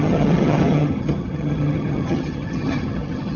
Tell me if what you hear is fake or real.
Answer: fake